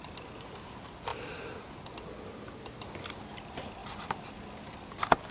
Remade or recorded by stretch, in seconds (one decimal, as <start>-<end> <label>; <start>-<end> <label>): 0.0-0.7 remade; 0.7-5.3 recorded